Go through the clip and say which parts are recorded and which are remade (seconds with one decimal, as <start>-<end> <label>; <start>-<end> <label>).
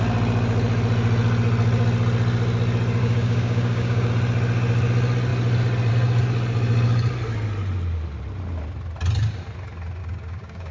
0.0-3.0 recorded; 3.0-4.1 remade; 4.1-10.0 recorded; 10.0-10.7 remade